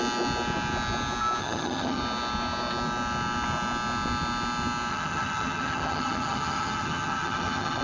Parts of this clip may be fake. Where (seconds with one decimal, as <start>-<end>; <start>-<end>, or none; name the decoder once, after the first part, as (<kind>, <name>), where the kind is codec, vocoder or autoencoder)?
1.4-2.0 (vocoder, HiFi-GAN); 4.9-7.8